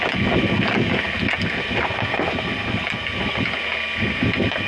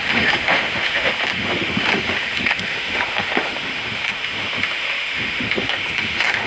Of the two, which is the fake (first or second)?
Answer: second